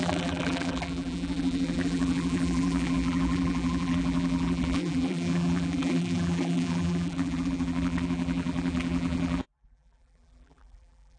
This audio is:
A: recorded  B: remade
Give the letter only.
B